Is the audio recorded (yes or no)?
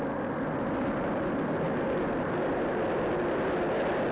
yes